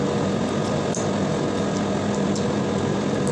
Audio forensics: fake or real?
real